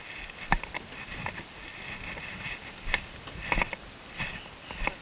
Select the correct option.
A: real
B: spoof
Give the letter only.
A